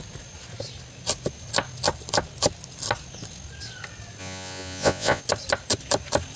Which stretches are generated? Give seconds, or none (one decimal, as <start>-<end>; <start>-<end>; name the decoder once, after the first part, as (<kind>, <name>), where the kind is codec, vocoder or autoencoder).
4.2-5.2 (vocoder, Vocos)